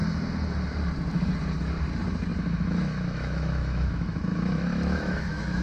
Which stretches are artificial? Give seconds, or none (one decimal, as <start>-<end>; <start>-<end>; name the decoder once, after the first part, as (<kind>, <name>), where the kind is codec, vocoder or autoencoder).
2.3-5.6 (autoencoder, DAC-VAE)